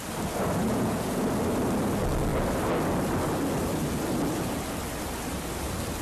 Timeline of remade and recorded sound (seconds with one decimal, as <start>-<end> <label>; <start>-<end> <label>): 0.0-0.6 recorded; 0.6-1.3 remade; 1.3-6.0 recorded